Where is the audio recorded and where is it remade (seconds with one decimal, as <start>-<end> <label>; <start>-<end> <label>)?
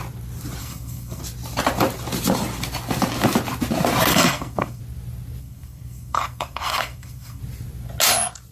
0.0-0.6 recorded; 0.6-1.2 remade; 1.2-4.1 recorded; 4.1-4.8 remade; 4.8-5.4 recorded; 5.4-7.4 remade; 7.4-8.5 recorded